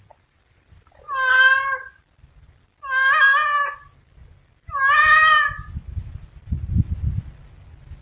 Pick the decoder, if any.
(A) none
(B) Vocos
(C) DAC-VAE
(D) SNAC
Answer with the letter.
A